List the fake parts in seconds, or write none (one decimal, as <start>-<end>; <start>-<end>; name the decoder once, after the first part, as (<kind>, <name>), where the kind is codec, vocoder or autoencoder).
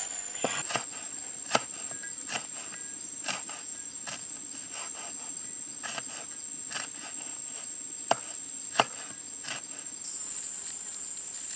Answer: 0.0-1.0 (vocoder, Vocos)